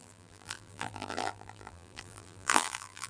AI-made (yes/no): yes